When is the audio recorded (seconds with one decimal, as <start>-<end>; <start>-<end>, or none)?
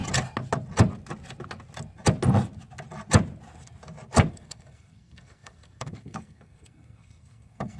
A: 0.0-4.3